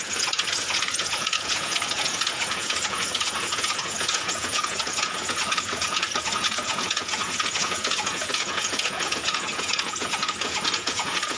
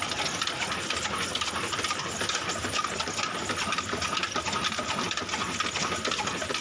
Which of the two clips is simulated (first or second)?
first